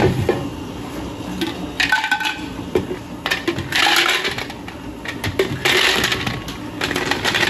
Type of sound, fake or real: real